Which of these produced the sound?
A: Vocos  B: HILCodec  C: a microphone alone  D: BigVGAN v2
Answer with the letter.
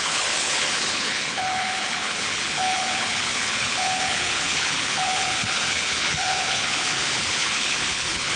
B